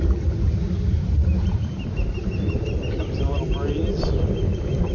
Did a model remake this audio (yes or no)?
no